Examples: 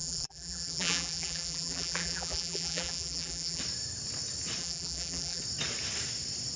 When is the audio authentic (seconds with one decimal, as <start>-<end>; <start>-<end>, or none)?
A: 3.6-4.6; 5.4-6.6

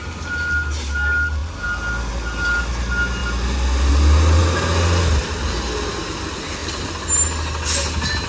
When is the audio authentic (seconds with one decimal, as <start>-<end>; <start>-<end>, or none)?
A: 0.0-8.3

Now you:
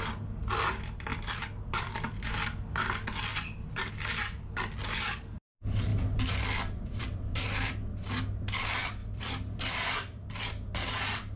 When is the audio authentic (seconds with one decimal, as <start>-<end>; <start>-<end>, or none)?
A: 0.0-1.1; 2.3-3.3; 3.9-5.9; 7.7-9.0; 10.4-11.4

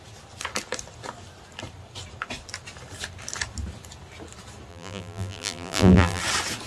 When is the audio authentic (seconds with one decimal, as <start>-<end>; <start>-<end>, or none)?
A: 0.0-4.7; 6.2-6.7

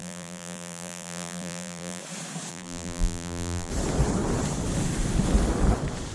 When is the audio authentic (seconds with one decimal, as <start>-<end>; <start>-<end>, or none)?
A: 2.0-2.5; 3.7-6.1